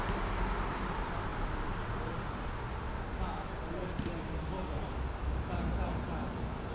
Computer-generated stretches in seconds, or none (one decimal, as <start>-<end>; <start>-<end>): none